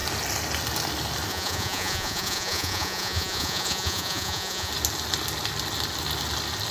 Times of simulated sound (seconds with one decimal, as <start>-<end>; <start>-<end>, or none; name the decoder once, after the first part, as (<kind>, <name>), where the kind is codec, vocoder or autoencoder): 1.3-4.7 (vocoder, Vocos)